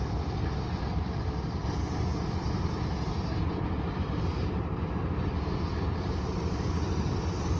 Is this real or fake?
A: real